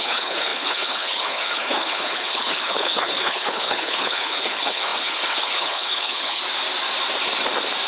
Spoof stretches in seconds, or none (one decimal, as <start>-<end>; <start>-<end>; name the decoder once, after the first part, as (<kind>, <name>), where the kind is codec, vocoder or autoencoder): 0.0-6.4 (codec, HILCodec)